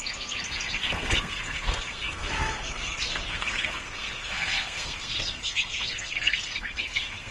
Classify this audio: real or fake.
fake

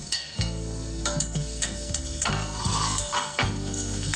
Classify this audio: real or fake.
fake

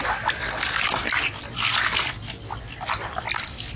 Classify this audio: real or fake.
real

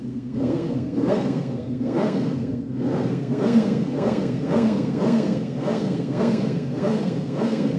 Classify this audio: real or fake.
fake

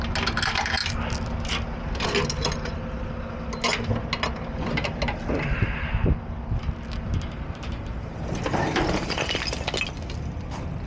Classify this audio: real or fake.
real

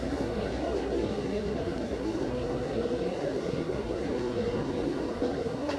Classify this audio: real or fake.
fake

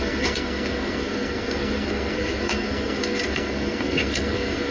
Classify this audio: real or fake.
fake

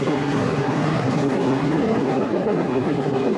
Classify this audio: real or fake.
fake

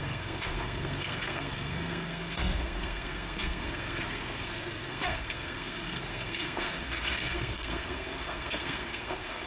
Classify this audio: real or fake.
fake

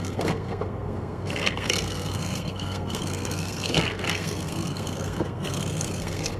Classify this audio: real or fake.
fake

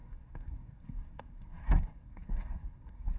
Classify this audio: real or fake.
fake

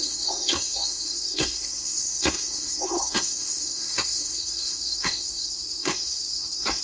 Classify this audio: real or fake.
fake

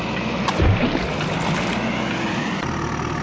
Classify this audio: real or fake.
real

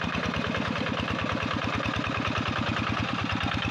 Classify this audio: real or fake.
real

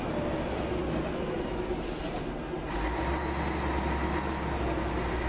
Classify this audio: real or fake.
real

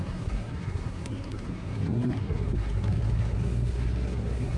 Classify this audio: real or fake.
fake